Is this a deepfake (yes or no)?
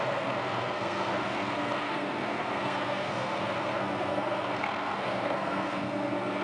yes